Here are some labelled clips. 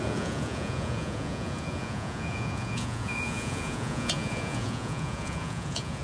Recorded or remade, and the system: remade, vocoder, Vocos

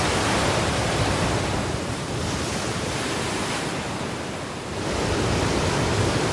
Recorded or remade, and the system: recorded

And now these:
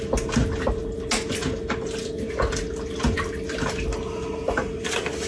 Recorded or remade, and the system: recorded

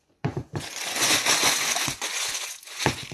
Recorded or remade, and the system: remade, vocoder, Vocos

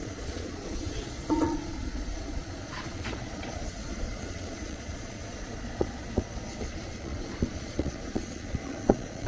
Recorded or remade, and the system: remade, vocoder, Vocos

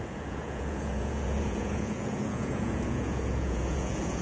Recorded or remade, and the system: remade, vocoder, Vocos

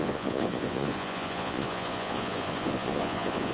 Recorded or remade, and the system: remade, vocoder, Vocos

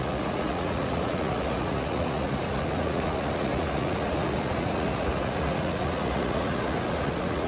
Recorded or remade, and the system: remade, vocoder, Vocos